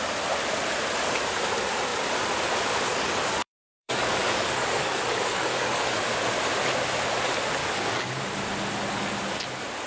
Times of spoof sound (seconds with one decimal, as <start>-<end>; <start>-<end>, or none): 2.9-6.0; 7.6-8.3